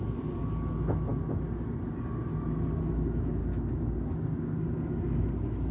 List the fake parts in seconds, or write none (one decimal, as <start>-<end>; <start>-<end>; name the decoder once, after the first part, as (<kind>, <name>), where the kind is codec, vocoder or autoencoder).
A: 3.4-5.7 (codec, DAC)

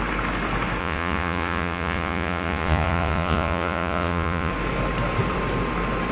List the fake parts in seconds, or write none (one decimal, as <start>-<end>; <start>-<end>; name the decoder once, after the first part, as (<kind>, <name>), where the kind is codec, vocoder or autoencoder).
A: 0.8-4.5 (vocoder, Vocos)

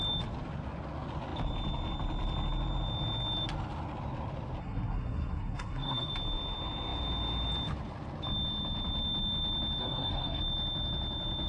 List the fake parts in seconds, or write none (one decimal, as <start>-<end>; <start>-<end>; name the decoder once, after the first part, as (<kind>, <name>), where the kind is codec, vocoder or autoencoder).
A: 4.6-6.1 (codec, SNAC); 9.8-10.4

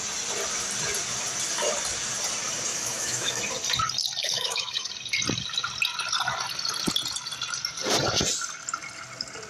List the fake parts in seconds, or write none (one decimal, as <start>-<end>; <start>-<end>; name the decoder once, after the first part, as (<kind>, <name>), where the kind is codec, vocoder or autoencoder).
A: 2.7-3.4 (autoencoder, DAC-VAE); 4.2-4.9

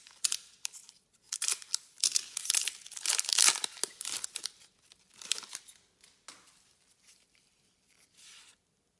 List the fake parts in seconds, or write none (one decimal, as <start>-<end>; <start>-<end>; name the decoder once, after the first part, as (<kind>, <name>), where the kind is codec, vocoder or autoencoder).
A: 0.8-1.6 (vocoder, BigVGAN v2)

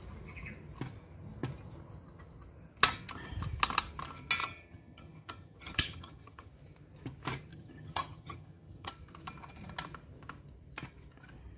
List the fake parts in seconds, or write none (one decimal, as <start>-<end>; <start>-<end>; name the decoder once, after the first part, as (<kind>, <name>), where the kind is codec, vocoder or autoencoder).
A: 4.4-6.5 (vocoder, HiFi-GAN); 7.5-8.9